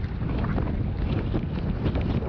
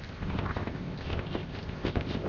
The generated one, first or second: second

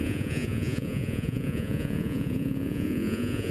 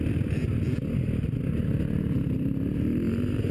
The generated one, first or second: first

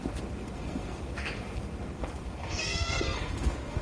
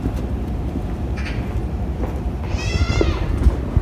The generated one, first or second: first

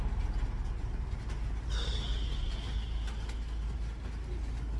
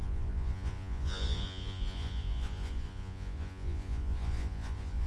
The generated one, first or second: second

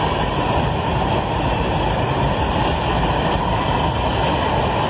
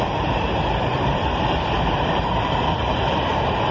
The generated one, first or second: second